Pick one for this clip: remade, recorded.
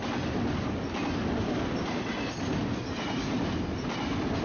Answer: recorded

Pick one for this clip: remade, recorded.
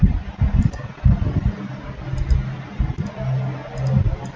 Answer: recorded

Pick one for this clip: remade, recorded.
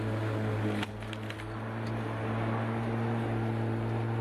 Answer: recorded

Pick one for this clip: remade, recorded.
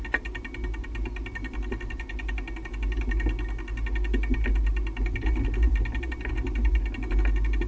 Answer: recorded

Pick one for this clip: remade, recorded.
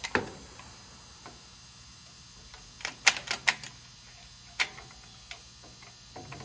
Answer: recorded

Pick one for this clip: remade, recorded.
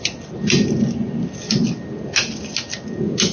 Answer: recorded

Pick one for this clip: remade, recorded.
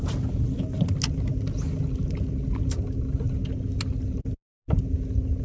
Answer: recorded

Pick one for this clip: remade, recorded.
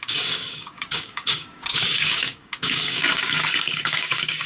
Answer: remade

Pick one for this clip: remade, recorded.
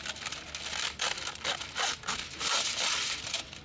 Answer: recorded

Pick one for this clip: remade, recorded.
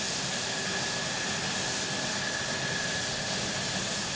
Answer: recorded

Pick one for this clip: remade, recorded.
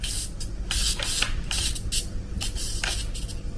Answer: recorded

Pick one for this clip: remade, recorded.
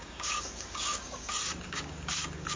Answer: remade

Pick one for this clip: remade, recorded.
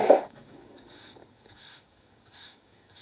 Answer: remade